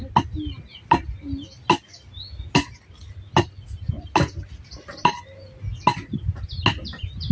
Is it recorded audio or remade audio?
recorded